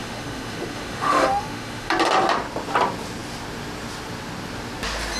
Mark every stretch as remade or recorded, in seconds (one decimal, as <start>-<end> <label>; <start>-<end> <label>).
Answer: 0.0-1.9 remade; 1.9-5.2 recorded